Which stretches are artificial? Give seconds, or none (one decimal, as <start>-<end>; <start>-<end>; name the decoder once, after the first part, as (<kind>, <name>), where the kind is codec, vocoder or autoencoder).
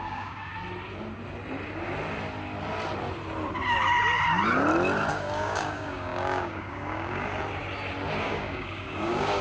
0.0-0.5 (codec, DAC); 5.1-7.3; 8.2-9.4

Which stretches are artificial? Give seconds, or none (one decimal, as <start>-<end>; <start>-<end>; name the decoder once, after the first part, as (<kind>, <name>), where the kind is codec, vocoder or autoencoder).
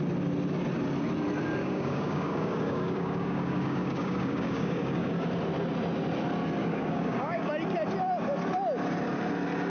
1.6-5.1 (codec, DAC); 6.6-7.5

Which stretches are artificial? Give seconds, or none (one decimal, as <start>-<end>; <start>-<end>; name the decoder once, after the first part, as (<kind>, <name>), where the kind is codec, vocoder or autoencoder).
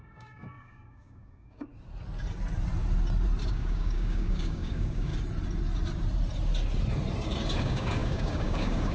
0.0-1.7 (codec, DAC); 3.5-5.1; 7.6-8.9